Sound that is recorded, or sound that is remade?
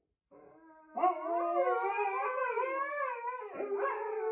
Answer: recorded